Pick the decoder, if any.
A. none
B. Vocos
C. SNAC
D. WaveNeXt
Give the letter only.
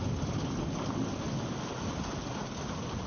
A